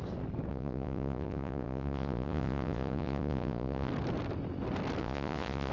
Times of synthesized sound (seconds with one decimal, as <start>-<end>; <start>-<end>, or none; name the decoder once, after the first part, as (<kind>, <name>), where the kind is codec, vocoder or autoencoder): 0.5-3.9 (vocoder, Vocos); 5.0-5.7